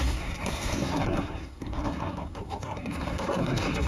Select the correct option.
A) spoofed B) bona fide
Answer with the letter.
A